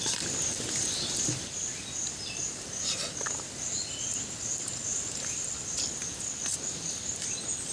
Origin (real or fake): real